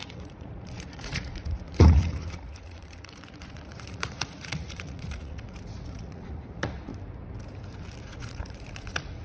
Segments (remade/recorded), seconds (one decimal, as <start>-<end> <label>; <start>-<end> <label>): 0.0-6.9 remade; 6.9-8.0 recorded; 8.0-9.2 remade